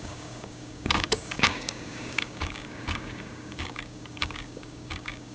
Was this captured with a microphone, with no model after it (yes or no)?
no